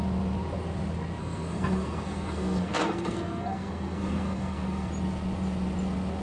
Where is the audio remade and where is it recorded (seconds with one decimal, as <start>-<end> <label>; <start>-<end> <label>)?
0.0-1.2 recorded; 1.2-4.9 remade; 4.9-6.2 recorded